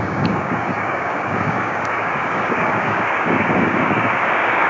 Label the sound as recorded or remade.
remade